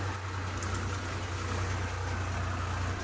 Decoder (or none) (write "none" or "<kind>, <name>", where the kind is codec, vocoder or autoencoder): none